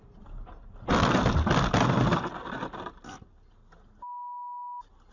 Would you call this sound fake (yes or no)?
no